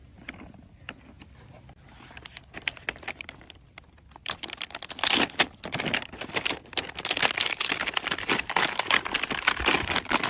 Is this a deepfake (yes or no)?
no